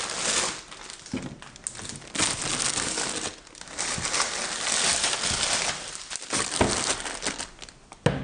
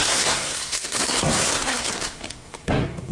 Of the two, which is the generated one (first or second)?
second